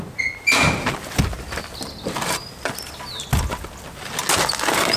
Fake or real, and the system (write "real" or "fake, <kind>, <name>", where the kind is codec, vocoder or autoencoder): real